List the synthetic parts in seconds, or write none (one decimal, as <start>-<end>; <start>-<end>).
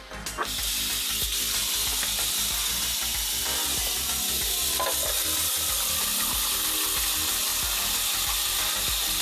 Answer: none